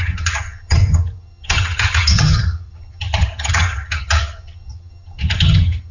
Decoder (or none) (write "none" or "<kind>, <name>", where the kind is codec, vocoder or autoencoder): vocoder, HiFi-GAN